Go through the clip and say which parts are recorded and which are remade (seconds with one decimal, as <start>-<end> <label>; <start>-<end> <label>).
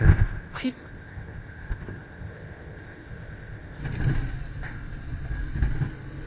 0.0-3.8 remade; 3.8-6.3 recorded